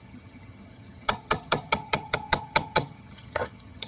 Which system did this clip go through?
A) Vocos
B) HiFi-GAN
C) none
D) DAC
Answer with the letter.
B